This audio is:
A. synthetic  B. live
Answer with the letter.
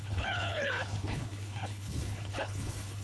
A